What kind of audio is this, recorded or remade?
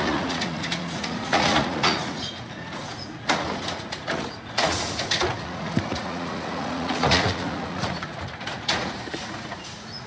remade